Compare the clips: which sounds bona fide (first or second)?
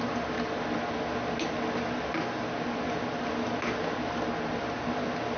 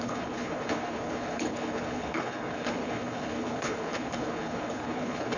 first